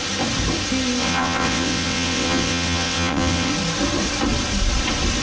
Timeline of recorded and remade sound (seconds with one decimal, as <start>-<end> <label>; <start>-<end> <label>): 0.0-1.0 recorded; 1.0-3.5 remade; 3.5-5.2 recorded

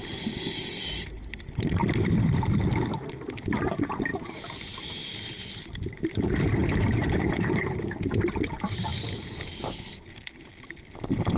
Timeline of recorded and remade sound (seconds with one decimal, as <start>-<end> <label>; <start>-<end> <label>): 0.0-1.8 remade; 1.8-2.4 recorded; 2.4-6.6 remade; 6.6-7.2 recorded; 7.2-11.4 remade

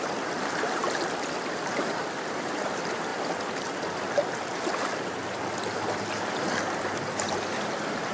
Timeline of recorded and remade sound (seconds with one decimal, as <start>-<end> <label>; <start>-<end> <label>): 0.0-3.1 remade; 3.1-6.6 recorded; 6.6-8.1 remade

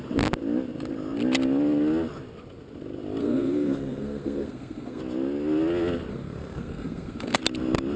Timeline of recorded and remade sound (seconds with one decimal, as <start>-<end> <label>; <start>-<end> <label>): 0.0-3.2 recorded; 3.2-5.0 remade; 5.0-6.1 recorded; 6.1-7.4 remade; 7.4-8.0 recorded

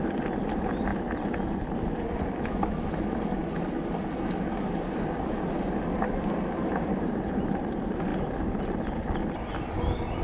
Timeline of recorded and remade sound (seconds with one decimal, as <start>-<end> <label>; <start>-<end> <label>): 0.0-6.7 recorded; 6.7-7.6 remade; 7.6-10.2 recorded

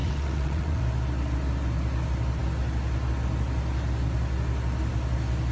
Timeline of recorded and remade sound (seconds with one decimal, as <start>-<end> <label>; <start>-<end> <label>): 0.0-0.8 remade; 0.8-5.5 recorded